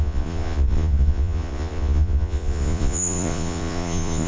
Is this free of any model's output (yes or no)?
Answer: no